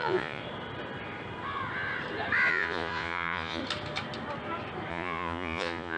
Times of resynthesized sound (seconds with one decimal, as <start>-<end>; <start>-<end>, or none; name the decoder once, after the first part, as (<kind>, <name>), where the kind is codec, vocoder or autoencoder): 0.0-0.4 (vocoder, Vocos); 2.5-3.6; 4.9-6.0

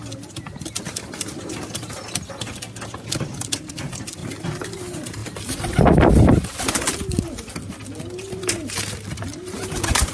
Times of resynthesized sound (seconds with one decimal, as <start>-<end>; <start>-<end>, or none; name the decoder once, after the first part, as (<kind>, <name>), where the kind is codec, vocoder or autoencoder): none

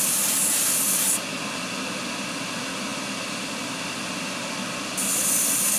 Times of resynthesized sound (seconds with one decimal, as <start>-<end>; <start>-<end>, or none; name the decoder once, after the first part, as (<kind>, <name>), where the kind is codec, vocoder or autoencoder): none

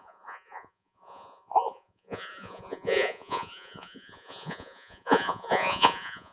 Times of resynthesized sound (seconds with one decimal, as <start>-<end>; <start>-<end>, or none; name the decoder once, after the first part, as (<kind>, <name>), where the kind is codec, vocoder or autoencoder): 0.0-6.3 (vocoder, Vocos)

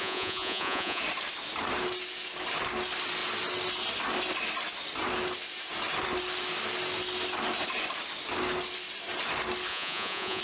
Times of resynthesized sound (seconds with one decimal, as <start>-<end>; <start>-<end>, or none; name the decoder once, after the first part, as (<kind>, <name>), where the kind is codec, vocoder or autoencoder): 0.0-1.0 (vocoder, Vocos); 9.7-10.4